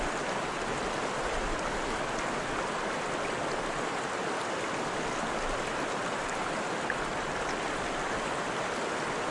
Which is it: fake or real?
real